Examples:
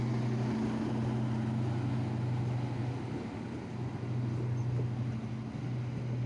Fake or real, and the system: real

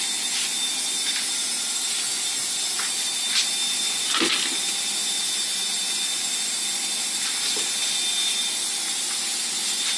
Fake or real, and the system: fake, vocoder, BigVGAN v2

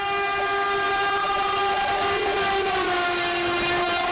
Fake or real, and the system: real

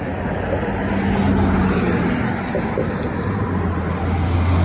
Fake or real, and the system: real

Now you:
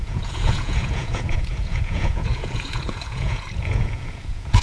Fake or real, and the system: fake, vocoder, Vocos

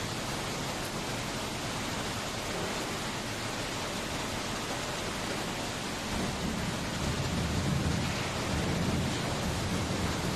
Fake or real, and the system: real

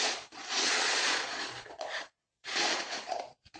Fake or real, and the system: fake, vocoder, Vocos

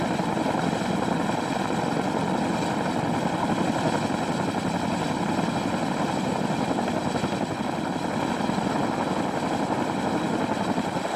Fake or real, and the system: real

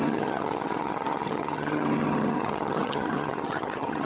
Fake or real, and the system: fake, vocoder, HiFi-GAN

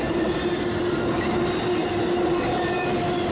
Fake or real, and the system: real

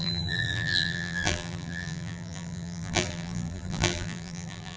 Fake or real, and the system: fake, vocoder, BigVGAN v2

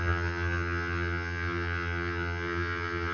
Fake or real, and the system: fake, vocoder, HiFi-GAN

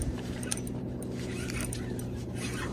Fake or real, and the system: fake, vocoder, BigVGAN v2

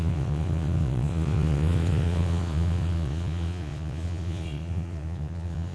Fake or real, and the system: fake, vocoder, Vocos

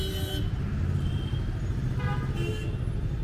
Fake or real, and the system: real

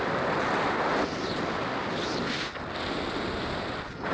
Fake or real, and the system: real